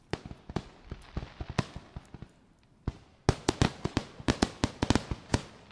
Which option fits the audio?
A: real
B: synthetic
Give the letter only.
A